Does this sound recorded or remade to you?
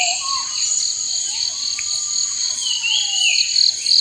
recorded